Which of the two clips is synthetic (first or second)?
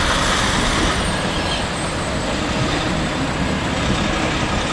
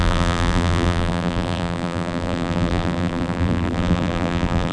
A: second